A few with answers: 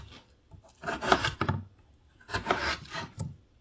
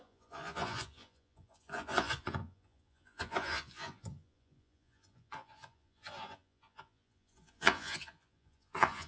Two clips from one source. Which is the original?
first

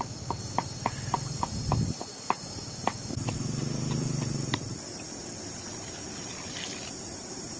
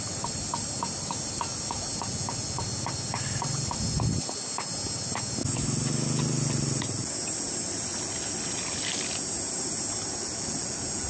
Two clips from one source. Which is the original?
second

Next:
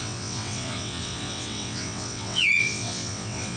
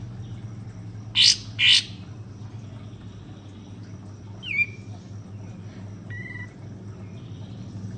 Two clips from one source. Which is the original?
second